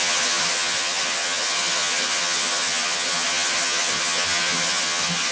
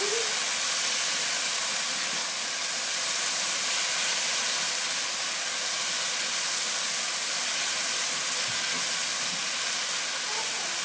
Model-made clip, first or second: first